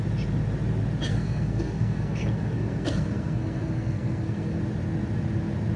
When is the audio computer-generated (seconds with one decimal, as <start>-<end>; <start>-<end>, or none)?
1.1-4.6